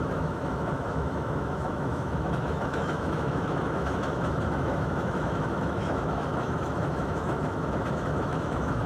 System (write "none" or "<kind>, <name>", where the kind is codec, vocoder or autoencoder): autoencoder, DAC-VAE